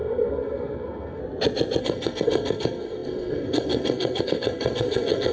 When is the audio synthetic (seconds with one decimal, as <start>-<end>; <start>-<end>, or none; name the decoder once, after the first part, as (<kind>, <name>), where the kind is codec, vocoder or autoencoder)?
0.0-1.2 (codec, SNAC); 1.8-5.3